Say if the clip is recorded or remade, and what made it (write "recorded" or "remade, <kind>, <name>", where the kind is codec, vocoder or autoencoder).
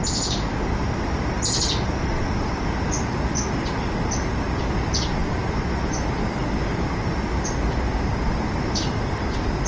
recorded